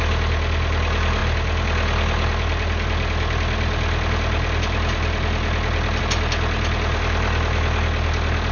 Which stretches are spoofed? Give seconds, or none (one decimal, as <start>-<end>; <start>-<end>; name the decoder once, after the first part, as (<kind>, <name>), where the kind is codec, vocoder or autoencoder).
none